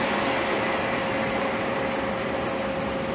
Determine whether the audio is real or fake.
real